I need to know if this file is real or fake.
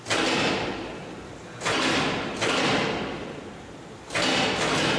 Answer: real